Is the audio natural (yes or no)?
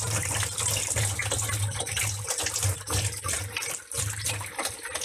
yes